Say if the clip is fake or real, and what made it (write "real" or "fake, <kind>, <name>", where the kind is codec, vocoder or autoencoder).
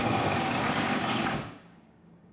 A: fake, codec, DAC